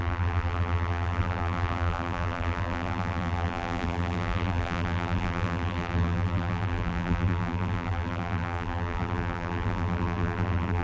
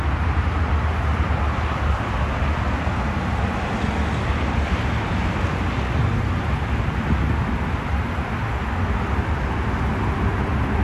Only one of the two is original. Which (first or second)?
second